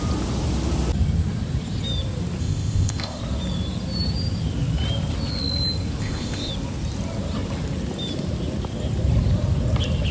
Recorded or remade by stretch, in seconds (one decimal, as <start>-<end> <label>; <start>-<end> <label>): 0.0-2.4 recorded; 2.4-3.2 remade; 3.2-6.0 recorded; 6.0-6.5 remade; 6.5-10.1 recorded